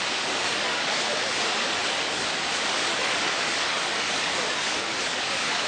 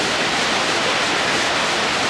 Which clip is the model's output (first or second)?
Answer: first